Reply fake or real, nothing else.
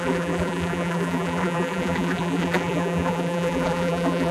fake